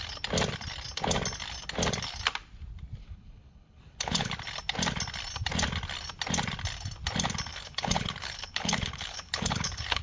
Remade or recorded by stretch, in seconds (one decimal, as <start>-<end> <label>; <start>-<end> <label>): 0.0-3.0 recorded; 3.0-4.3 remade; 4.3-7.5 recorded; 7.5-10.0 remade

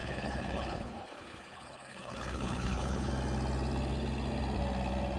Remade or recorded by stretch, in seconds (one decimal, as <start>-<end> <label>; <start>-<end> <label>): 0.0-3.1 remade; 3.1-5.2 recorded

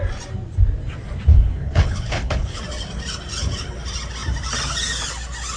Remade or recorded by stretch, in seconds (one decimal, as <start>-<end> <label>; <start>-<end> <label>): 0.0-1.3 recorded; 1.3-2.6 remade; 2.6-5.6 recorded